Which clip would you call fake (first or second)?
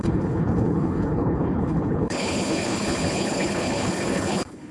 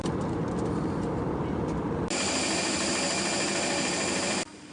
first